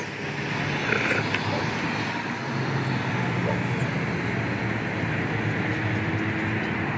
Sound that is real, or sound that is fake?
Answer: real